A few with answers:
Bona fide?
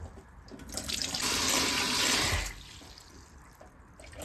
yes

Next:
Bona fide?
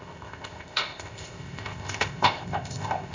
no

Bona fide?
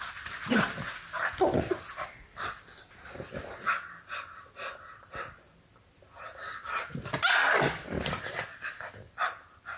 yes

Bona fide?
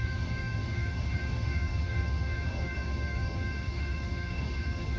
no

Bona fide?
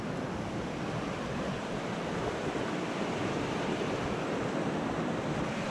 no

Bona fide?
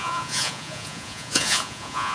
no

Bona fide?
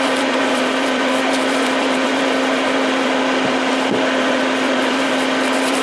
no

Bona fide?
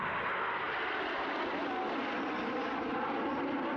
yes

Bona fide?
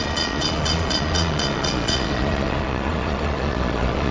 no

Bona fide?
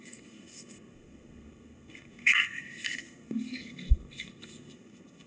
no